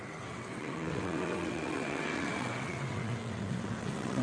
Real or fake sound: fake